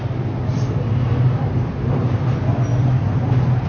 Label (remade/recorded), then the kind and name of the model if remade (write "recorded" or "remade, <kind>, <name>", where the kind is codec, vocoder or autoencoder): recorded